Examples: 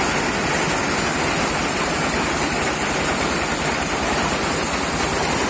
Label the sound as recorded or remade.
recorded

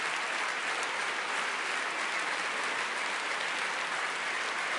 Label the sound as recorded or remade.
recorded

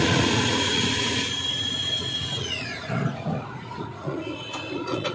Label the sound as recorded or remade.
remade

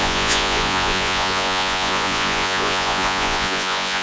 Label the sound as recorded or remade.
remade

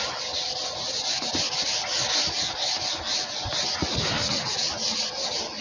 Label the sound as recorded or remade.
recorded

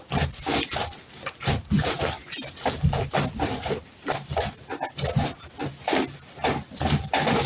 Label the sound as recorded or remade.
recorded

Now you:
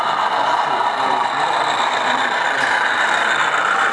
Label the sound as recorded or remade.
recorded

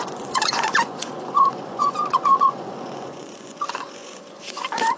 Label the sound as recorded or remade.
remade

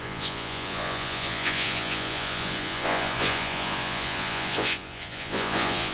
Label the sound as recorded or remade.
remade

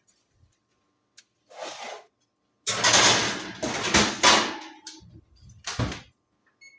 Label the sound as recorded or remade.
recorded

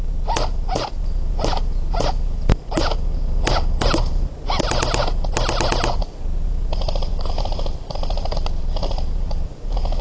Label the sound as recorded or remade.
recorded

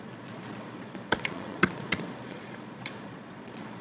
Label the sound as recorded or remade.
remade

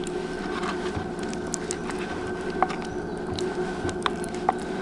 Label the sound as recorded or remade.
recorded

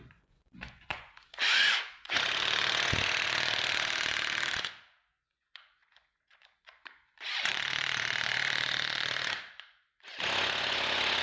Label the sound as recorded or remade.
remade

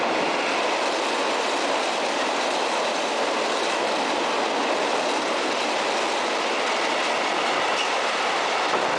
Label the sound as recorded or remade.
recorded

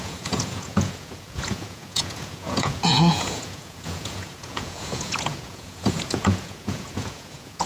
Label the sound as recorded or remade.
remade